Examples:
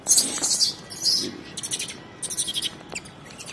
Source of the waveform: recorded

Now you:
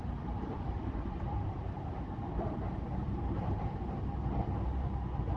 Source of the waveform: remade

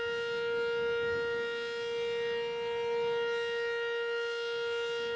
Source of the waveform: recorded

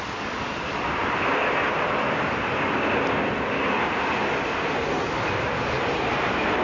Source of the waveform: recorded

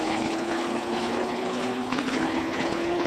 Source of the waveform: remade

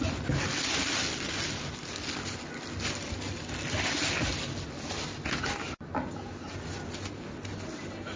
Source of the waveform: recorded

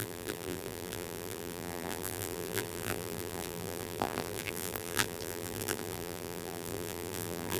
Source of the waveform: remade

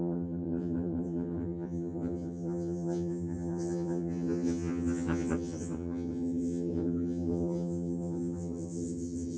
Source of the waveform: remade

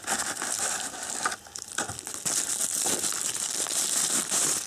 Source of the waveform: remade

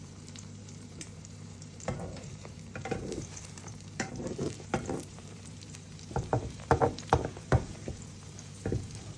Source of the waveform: remade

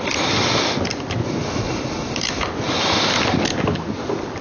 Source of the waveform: recorded